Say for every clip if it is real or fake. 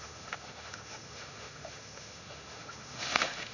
fake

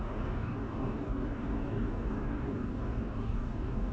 fake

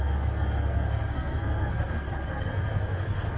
fake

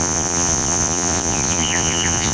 fake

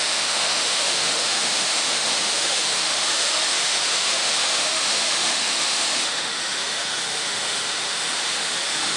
fake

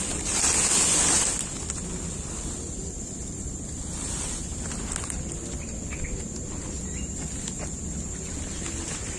real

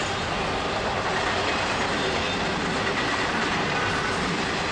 real